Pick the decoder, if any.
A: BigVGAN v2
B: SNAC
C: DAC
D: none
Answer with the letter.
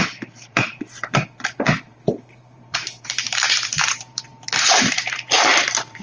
A